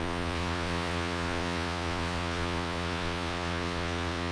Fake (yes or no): yes